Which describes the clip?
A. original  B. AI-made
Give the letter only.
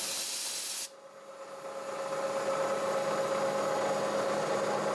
A